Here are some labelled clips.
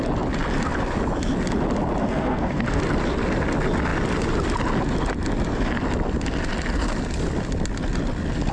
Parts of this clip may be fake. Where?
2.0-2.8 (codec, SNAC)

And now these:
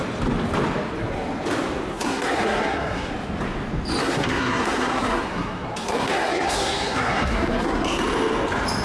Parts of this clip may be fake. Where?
1.9-3.1 (codec, SNAC); 4.0-8.0

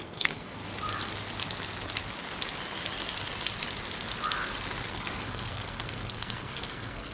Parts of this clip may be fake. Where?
0.0-0.6 (codec, SNAC); 4.9-7.1

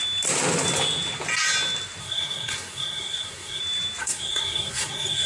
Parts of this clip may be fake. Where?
2.0-3.6 (codec, SNAC); 4.0-5.3

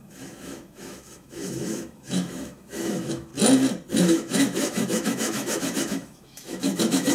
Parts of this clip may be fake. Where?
0.0-3.3 (autoencoder, DAC-VAE); 4.0-7.1

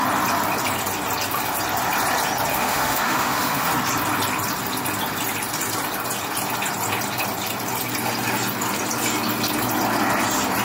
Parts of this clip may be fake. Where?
2.5-3.7 (autoencoder, DAC-VAE)

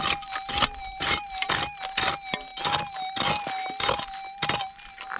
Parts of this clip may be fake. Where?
0.8-1.5 (vocoder, BigVGAN v2)

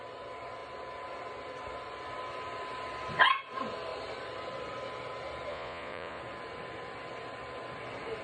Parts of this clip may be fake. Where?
5.5-6.2 (vocoder, Vocos)